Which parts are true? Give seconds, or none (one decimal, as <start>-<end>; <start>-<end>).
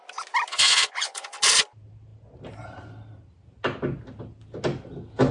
0.0-0.5; 1.4-5.3